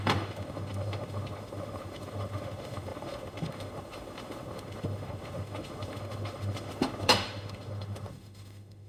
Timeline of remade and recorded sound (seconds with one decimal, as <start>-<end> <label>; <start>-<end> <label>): 0.0-8.9 remade

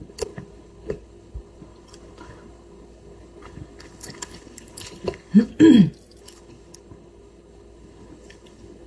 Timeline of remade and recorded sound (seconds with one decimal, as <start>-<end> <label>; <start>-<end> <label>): 0.0-5.5 remade; 5.5-6.2 recorded; 6.2-8.9 remade

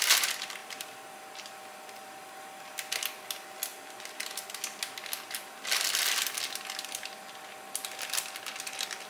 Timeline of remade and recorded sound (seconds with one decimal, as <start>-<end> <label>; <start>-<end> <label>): 0.0-0.6 recorded; 0.6-2.6 remade; 2.6-9.1 recorded